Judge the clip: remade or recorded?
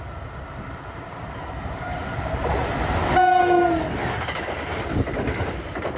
recorded